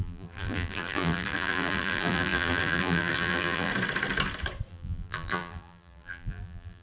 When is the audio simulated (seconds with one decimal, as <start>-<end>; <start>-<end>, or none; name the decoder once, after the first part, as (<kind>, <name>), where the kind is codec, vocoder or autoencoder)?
0.0-3.7 (vocoder, BigVGAN v2); 4.7-6.8